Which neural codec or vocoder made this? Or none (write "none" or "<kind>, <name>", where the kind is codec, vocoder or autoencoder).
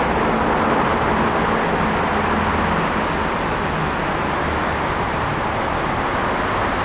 none